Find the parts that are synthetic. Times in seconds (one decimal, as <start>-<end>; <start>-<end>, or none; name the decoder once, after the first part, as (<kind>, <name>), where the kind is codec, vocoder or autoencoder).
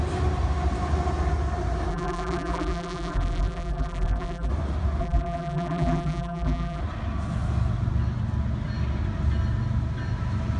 1.9-4.5 (vocoder, BigVGAN v2); 5.0-6.8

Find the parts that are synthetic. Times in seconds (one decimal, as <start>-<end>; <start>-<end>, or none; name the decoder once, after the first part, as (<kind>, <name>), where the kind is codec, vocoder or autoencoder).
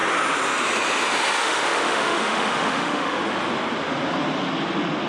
1.4-3.2 (autoencoder, DAC-VAE)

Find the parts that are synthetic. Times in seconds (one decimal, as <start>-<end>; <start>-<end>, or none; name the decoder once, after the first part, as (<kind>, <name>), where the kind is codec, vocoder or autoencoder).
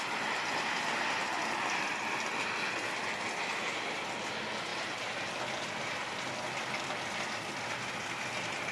none